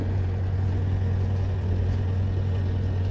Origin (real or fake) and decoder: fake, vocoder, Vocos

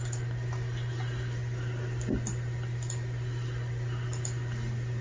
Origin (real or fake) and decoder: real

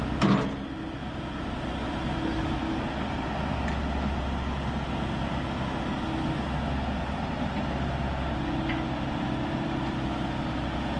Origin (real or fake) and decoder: real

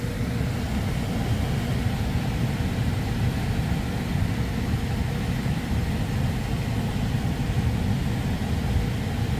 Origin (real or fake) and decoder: real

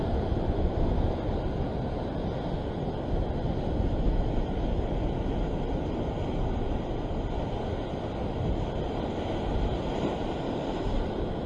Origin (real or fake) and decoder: real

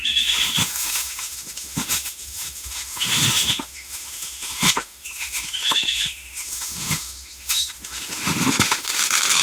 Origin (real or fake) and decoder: fake, autoencoder, DAC-VAE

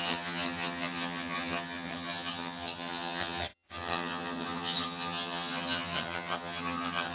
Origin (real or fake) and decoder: fake, vocoder, HiFi-GAN